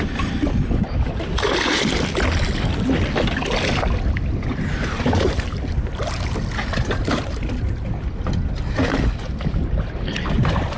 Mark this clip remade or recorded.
recorded